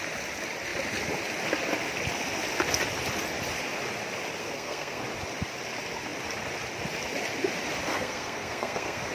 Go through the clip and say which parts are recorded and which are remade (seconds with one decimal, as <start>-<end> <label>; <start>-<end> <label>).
0.0-4.4 recorded; 4.4-5.0 remade; 5.0-7.9 recorded; 7.9-9.1 remade

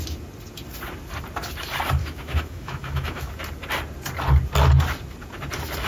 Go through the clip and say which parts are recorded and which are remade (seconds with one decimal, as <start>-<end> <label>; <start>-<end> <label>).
0.0-2.0 recorded; 2.0-3.3 remade; 3.3-5.9 recorded

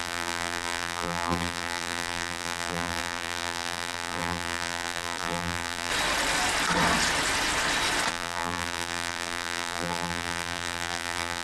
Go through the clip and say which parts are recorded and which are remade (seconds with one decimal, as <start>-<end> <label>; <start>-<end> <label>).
0.0-5.9 remade; 5.9-8.1 recorded; 8.1-11.4 remade

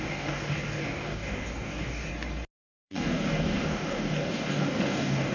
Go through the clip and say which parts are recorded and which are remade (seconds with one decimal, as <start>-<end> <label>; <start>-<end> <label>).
0.0-2.1 remade; 2.1-2.7 recorded; 2.7-5.3 remade

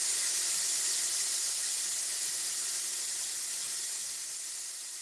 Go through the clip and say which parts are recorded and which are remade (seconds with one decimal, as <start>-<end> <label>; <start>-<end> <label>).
0.0-5.0 recorded